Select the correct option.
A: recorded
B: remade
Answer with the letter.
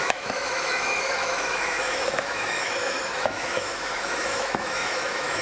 B